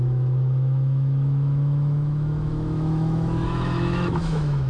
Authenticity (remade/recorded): remade